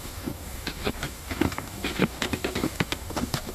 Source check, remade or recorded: remade